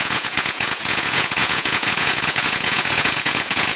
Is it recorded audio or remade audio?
remade